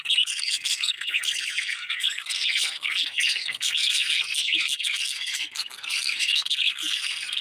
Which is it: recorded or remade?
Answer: remade